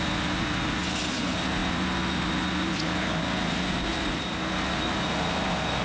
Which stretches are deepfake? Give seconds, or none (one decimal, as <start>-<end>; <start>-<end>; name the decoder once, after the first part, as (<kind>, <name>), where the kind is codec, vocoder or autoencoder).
none